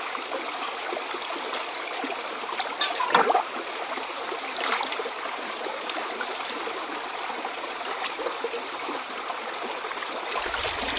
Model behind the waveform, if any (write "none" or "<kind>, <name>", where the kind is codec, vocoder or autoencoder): none